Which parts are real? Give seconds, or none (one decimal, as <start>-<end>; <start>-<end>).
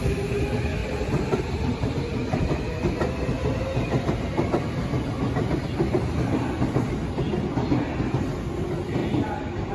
0.0-0.8; 2.0-9.7